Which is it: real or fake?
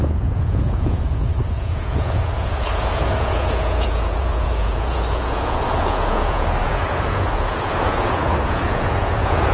fake